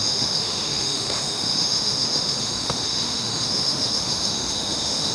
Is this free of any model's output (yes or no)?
no